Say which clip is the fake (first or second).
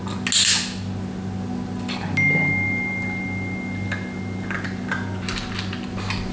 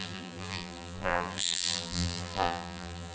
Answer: second